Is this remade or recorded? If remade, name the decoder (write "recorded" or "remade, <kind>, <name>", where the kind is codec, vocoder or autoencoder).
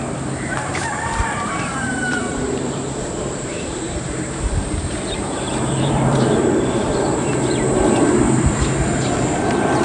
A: remade, vocoder, BigVGAN v2